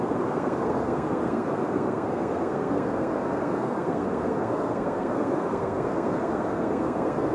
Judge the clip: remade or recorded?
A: remade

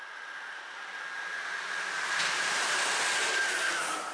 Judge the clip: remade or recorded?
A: recorded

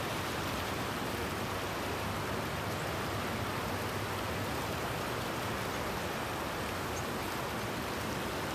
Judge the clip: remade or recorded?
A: recorded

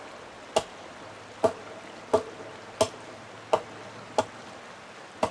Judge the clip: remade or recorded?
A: recorded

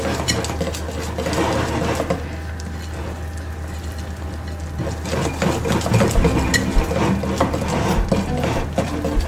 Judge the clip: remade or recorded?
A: recorded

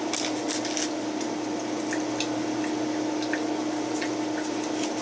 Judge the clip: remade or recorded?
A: recorded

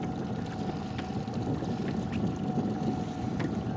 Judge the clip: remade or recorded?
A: recorded